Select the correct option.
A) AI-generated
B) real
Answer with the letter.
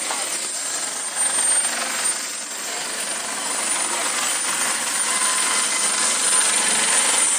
B